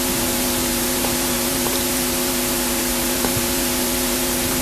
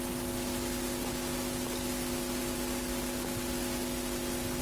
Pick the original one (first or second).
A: second